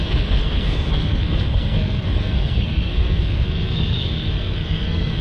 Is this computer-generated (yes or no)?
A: yes